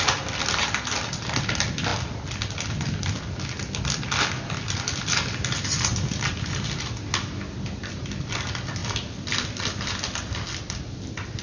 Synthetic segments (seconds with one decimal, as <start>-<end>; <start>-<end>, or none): none